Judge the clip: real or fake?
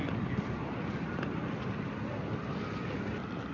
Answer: real